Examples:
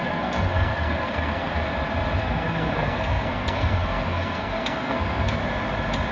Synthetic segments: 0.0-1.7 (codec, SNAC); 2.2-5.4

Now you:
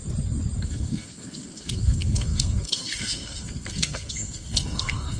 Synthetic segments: 0.6-5.2 (codec, SNAC)

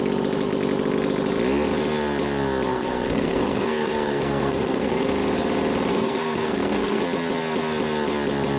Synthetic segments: 2.7-5.1 (codec, SNAC); 5.9-7.0

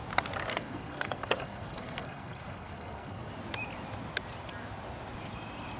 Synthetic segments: 0.5-3.3 (codec, SNAC)

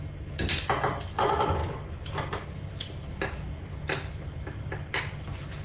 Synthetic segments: none

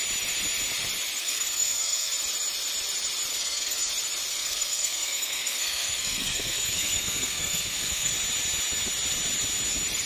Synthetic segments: 1.2-2.1 (codec, SNAC); 3.3-3.9; 4.3-8.1